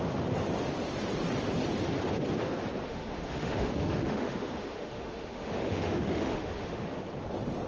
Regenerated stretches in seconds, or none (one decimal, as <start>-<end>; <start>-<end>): 2.9-7.0